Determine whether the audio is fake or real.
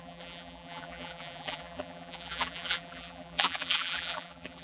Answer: fake